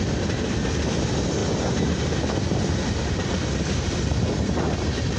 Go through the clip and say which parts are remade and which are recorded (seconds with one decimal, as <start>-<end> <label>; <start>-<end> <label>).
0.0-5.2 recorded